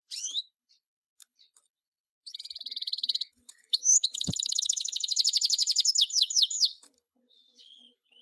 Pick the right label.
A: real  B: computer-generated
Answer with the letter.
B